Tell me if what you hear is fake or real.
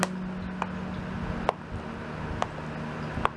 real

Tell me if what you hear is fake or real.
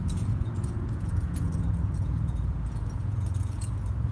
fake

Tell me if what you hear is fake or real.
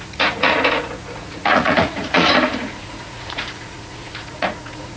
fake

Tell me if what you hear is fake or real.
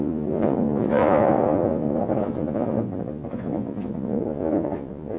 fake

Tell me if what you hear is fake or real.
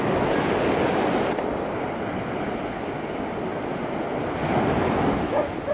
real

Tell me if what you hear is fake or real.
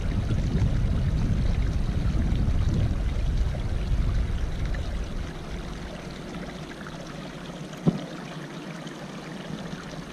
real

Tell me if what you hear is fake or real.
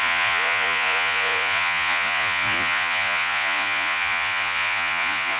fake